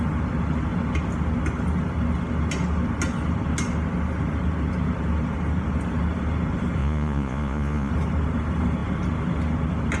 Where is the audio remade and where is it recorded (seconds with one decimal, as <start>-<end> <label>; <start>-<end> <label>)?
0.0-6.8 recorded; 6.8-7.9 remade; 7.9-10.0 recorded